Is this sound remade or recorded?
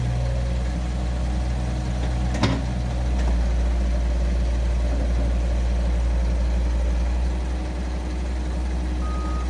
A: recorded